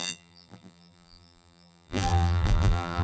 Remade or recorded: remade